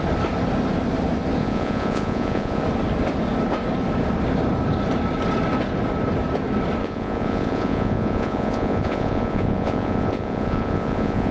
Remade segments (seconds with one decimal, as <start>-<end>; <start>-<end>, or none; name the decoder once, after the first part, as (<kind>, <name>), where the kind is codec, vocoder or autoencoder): 1.4-2.6 (vocoder, Vocos); 6.8-11.3